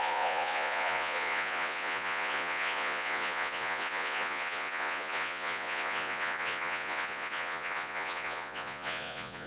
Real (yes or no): no